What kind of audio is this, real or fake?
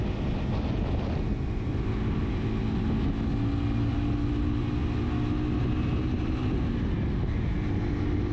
real